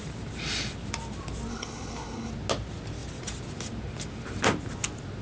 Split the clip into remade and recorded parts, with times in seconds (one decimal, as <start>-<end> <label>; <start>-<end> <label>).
0.0-1.5 recorded; 1.5-2.3 remade; 2.3-5.2 recorded